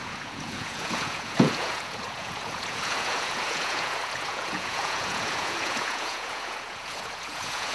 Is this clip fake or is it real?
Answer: fake